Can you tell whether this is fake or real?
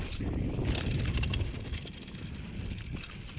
real